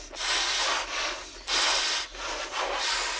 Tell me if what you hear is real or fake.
real